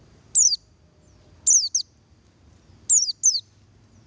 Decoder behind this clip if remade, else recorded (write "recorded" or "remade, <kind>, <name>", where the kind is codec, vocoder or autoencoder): recorded